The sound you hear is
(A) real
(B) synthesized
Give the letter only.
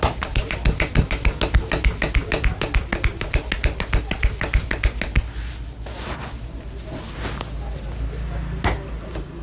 A